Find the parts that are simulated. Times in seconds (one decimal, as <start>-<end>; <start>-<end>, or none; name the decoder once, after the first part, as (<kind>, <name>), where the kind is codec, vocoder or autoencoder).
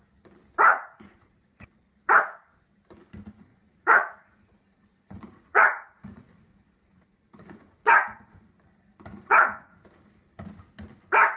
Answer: 0.7-1.8 (vocoder, Vocos); 3.5-8.5; 9.1-9.8